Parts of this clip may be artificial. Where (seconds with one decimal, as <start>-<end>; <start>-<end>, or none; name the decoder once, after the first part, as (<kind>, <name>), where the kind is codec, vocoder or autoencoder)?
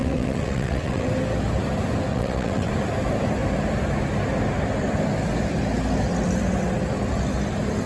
0.0-1.1 (vocoder, WaveNeXt); 2.1-2.7